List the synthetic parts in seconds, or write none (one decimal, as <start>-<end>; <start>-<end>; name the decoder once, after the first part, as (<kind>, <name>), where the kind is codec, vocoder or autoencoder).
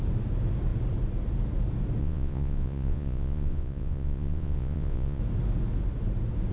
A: 2.0-5.2 (vocoder, Vocos)